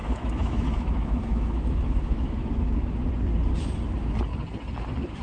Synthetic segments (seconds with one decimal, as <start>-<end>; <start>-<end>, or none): 0.0-3.1